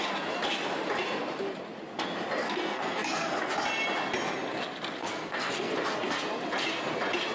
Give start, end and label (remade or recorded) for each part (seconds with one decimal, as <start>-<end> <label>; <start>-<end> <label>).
0.0-2.4 recorded; 2.4-3.5 remade; 3.5-5.0 recorded; 5.0-5.7 remade; 5.7-7.3 recorded